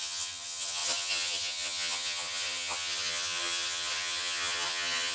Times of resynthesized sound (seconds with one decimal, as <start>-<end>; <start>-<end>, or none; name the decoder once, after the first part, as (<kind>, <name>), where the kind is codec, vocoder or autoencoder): 0.0-5.1 (vocoder, HiFi-GAN)